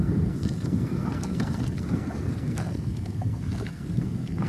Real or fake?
fake